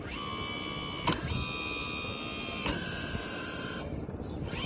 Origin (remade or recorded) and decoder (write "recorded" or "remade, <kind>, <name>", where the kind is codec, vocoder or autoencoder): recorded